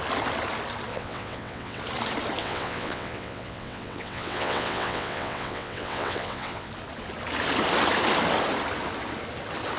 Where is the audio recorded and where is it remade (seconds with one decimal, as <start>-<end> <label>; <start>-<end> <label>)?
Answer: 0.0-0.9 recorded; 0.9-1.8 remade; 1.8-2.4 recorded; 2.4-6.7 remade; 6.7-9.8 recorded